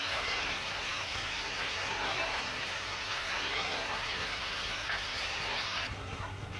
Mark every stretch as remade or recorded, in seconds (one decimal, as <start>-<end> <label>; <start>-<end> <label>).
0.0-6.6 remade